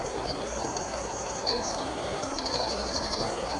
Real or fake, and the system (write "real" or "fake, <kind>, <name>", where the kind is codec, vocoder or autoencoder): fake, codec, SNAC